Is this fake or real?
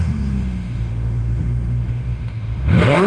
fake